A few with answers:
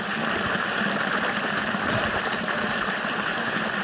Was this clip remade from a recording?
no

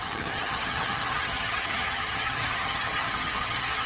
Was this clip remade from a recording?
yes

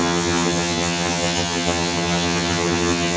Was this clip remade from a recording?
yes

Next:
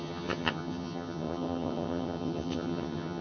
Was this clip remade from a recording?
yes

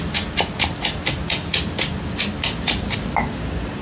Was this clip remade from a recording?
no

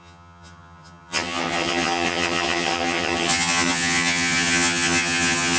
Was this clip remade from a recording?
yes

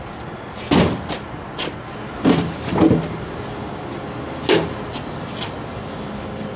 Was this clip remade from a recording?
no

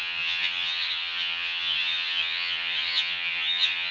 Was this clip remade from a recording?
yes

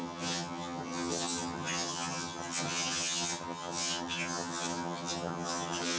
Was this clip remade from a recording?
yes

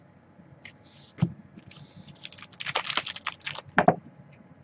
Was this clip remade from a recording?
no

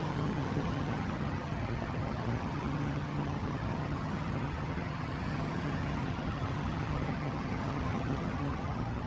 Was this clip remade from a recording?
yes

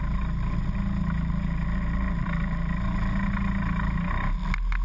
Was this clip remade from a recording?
no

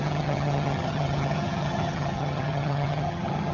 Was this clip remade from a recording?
yes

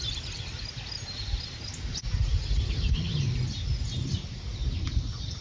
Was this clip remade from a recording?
no